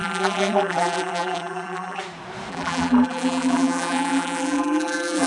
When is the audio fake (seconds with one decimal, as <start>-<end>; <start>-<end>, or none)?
0.0-2.0; 2.5-5.3